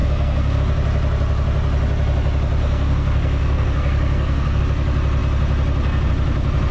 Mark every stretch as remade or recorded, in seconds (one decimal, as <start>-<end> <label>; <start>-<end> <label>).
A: 0.0-0.6 remade; 0.6-2.6 recorded; 2.6-4.6 remade; 4.6-6.7 recorded